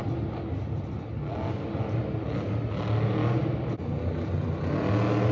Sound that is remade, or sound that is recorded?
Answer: recorded